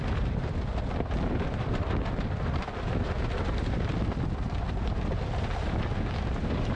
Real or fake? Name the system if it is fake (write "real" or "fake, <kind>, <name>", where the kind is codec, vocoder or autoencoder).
real